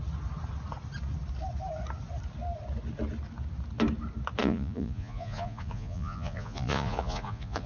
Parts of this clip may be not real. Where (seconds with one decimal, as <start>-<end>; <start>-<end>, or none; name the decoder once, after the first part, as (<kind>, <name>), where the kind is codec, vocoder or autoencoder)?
4.4-7.7 (vocoder, Vocos)

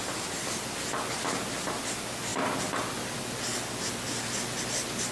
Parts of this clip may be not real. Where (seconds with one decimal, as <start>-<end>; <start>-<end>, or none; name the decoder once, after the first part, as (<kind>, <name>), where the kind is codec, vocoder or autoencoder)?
none